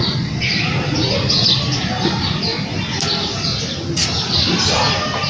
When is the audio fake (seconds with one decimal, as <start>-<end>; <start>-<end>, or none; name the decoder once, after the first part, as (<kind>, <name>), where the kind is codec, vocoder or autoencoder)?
none